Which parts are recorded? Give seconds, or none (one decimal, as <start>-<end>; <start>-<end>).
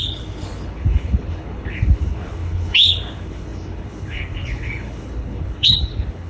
none